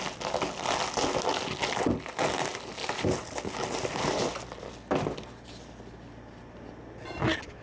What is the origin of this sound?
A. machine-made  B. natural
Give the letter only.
B